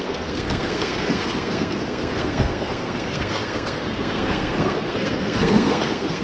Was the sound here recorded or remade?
remade